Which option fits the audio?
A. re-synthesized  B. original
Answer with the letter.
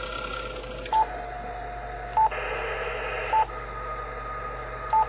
B